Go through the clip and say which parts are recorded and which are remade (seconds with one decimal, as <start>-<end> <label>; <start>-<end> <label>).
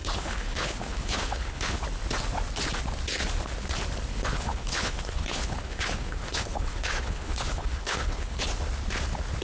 0.0-1.8 remade; 1.8-4.1 recorded; 4.1-8.4 remade; 8.4-9.4 recorded